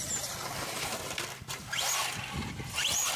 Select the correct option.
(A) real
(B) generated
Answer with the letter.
A